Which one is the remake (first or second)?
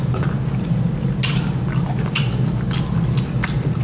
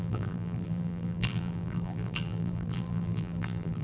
second